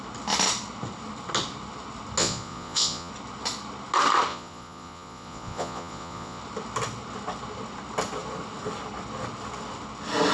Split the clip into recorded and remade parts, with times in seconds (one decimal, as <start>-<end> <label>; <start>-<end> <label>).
0.0-2.2 recorded; 2.2-3.1 remade; 3.1-4.3 recorded; 4.3-6.4 remade; 6.4-10.3 recorded